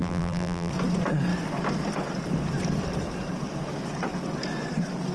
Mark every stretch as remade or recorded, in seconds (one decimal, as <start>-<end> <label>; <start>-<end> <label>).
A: 0.0-0.7 remade; 0.7-5.1 recorded